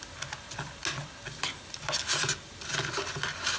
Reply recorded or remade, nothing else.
recorded